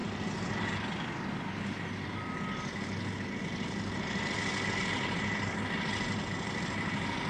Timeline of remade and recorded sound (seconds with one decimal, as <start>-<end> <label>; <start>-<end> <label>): 0.0-7.3 recorded